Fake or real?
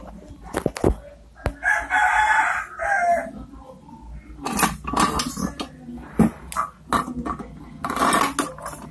real